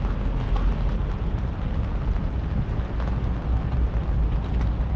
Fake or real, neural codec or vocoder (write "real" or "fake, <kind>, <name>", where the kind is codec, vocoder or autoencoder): real